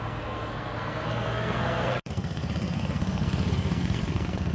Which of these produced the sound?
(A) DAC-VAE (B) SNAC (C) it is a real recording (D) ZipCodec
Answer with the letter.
B